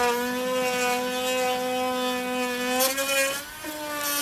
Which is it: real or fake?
real